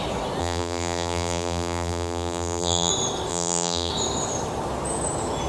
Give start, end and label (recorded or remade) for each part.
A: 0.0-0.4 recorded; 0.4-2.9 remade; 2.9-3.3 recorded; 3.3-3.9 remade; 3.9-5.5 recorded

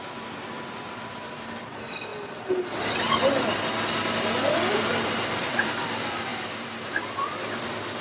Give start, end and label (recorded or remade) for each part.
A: 0.0-2.1 remade; 2.1-4.9 recorded; 4.9-8.0 remade